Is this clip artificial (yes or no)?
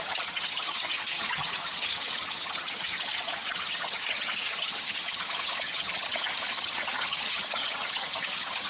yes